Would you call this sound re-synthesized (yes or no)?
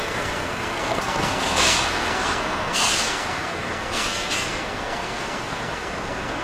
yes